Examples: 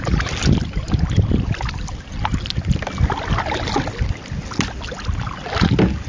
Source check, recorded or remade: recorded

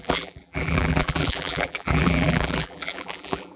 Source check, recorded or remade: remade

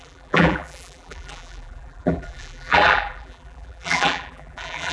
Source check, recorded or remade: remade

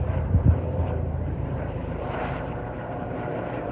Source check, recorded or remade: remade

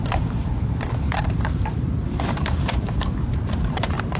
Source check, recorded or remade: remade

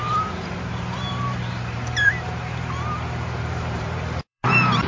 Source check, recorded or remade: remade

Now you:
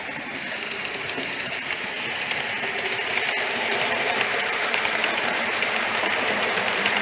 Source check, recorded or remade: remade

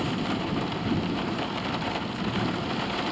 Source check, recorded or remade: recorded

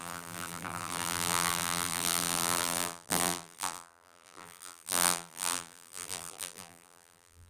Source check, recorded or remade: remade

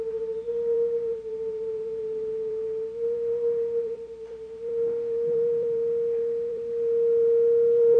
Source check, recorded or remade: remade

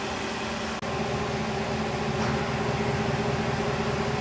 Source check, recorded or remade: recorded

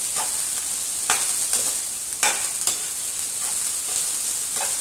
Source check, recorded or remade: recorded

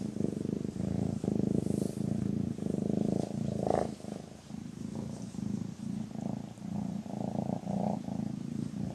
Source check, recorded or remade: remade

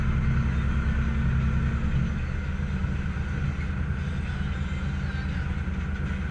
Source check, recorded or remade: recorded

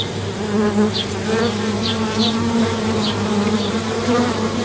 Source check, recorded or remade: remade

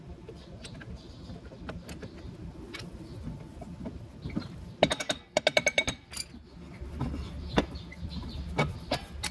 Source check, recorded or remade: recorded